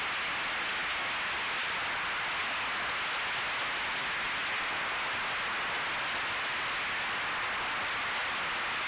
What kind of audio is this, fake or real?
real